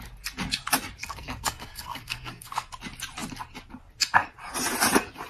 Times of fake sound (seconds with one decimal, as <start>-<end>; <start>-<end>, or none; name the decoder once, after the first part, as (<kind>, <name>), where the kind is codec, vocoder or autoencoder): 1.0-2.7 (codec, SNAC)